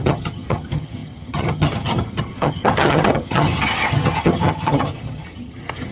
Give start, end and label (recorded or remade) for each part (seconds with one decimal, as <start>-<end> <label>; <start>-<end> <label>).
0.0-5.9 remade